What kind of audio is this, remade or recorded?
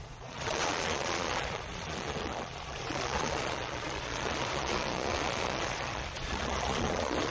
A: remade